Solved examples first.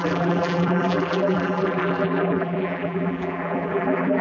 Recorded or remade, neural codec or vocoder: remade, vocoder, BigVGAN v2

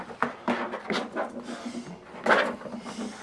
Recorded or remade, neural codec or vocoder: recorded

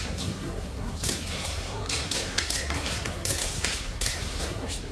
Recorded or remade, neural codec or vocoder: remade, codec, SNAC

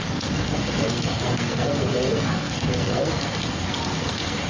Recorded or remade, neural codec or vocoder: remade, codec, SNAC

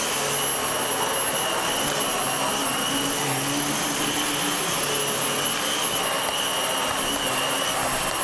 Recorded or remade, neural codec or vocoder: recorded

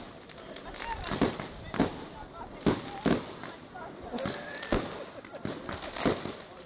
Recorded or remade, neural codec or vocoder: recorded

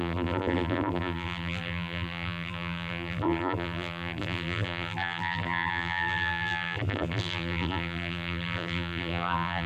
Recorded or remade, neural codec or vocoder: remade, vocoder, BigVGAN v2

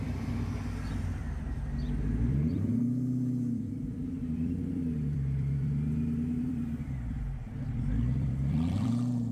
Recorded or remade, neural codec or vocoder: remade, vocoder, BigVGAN v2